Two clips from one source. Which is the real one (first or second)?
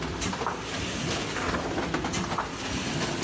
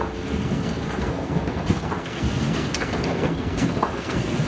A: first